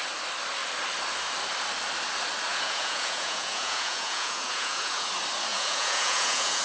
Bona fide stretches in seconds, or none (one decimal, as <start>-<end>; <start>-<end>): 0.0-2.5; 5.1-5.5